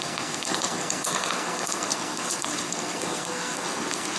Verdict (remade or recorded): remade